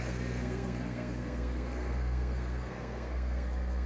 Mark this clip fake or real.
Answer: fake